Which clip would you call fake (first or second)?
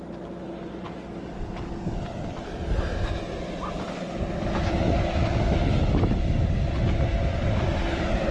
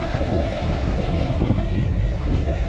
second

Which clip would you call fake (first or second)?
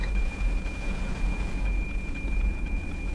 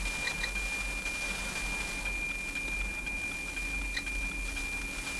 first